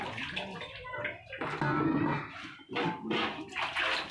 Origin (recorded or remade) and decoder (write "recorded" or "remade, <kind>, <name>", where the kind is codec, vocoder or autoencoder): recorded